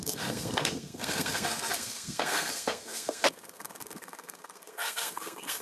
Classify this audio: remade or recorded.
remade